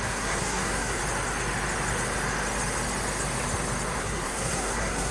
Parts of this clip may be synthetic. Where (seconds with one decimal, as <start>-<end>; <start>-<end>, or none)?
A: 0.0-1.0; 4.0-5.1